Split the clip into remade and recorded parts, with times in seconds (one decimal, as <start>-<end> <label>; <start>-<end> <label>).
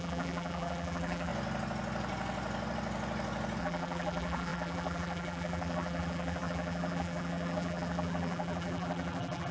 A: 0.0-1.3 remade; 1.3-3.6 recorded; 3.6-9.5 remade